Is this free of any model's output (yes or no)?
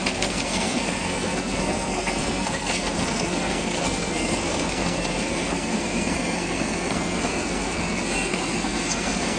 no